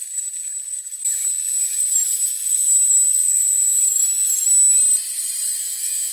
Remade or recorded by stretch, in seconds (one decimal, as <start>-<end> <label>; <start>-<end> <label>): 0.0-3.2 recorded; 3.2-3.8 remade; 3.8-5.6 recorded; 5.6-6.1 remade